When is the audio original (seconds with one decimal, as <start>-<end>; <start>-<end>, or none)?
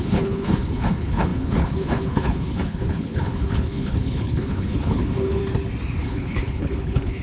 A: 5.4-6.0